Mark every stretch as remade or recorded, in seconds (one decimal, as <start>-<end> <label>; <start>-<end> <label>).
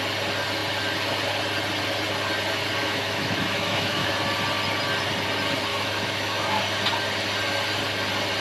0.0-2.8 recorded; 2.8-4.1 remade; 4.1-5.7 recorded; 5.7-6.6 remade; 6.6-8.4 recorded